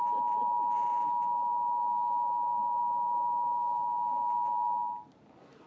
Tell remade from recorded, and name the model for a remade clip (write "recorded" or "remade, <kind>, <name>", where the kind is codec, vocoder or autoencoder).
recorded